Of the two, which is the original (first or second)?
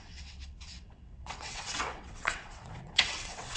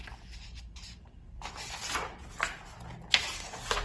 second